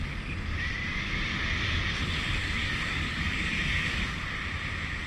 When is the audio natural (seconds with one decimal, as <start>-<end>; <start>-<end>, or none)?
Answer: 0.0-2.4; 4.2-5.1